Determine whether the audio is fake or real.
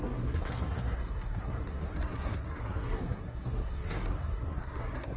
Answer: fake